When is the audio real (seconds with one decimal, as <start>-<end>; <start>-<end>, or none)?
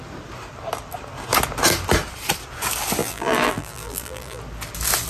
0.0-3.0; 4.4-5.1